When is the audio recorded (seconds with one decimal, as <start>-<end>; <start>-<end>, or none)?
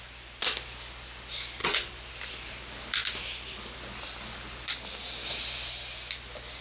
0.0-1.6; 2.1-6.6